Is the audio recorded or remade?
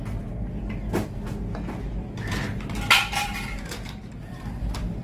recorded